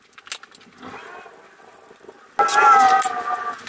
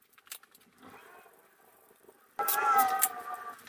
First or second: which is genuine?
first